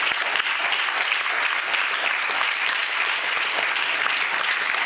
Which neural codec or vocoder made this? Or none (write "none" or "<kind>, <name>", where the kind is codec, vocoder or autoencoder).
none